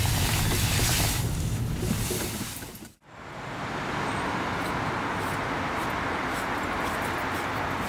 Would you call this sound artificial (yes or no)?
no